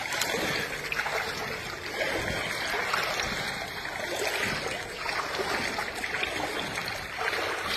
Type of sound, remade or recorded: recorded